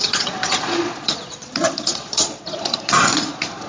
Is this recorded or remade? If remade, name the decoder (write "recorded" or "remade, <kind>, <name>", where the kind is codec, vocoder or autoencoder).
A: remade, vocoder, Vocos